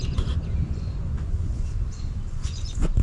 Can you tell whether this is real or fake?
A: fake